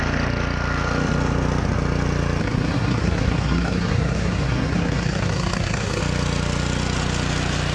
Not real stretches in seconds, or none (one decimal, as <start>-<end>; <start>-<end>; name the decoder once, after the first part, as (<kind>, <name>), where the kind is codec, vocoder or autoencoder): 2.4-6.0 (codec, SNAC)